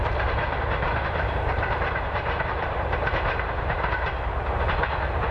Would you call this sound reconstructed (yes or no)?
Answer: yes